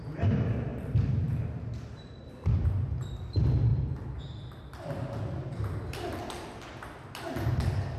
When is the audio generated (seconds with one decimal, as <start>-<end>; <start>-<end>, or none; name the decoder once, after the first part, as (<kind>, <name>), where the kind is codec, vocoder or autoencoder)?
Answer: 0.7-2.9 (vocoder, BigVGAN v2)

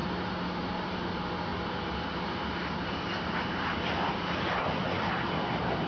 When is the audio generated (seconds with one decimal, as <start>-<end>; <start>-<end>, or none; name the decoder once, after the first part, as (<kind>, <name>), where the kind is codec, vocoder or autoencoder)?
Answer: none

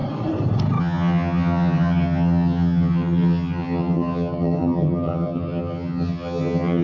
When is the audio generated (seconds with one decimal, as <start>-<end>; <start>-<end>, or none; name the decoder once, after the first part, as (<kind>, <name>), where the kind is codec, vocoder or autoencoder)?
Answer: 0.8-6.8 (vocoder, HiFi-GAN)

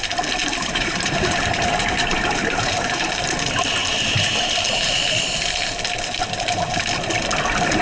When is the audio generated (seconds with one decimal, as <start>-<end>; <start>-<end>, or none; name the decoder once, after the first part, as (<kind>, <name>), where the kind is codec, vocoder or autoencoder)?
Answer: 0.4-3.1 (vocoder, BigVGAN v2)

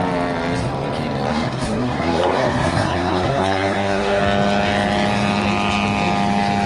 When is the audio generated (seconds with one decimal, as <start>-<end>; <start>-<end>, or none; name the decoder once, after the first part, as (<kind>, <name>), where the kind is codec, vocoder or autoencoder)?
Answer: 1.3-4.2 (codec, SNAC)

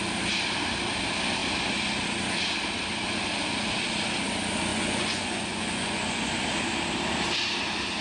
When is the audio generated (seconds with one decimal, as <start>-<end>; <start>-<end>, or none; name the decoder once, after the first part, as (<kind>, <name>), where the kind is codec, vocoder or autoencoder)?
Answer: 4.7-6.3 (vocoder, Vocos)

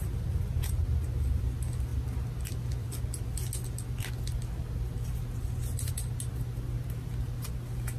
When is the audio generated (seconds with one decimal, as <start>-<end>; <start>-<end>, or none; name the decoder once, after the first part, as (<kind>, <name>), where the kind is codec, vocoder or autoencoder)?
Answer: none

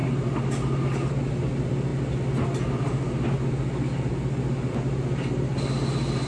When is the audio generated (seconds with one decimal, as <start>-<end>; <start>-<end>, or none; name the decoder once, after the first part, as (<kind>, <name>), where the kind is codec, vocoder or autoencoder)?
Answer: none